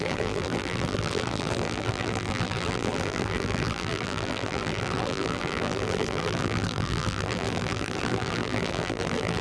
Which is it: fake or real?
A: fake